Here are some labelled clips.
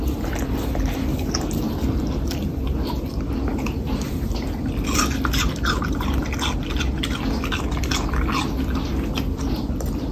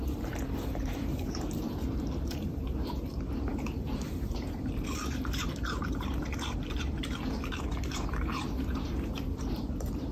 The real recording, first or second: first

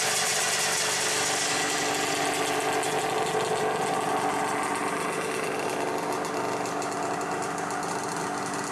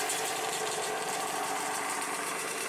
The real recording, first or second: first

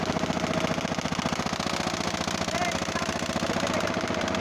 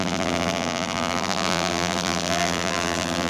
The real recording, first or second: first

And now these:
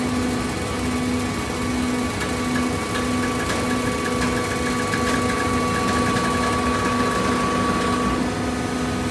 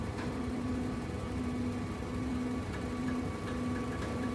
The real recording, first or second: first